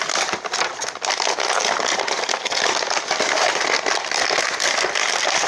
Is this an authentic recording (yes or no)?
yes